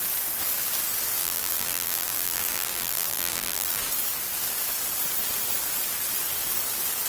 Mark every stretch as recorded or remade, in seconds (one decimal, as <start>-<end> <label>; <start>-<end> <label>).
0.0-1.2 recorded; 1.2-3.8 remade; 3.8-7.1 recorded